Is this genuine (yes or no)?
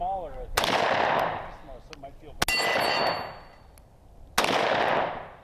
yes